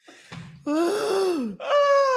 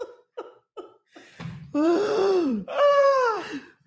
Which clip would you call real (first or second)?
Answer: first